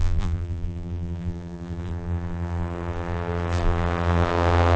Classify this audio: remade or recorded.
remade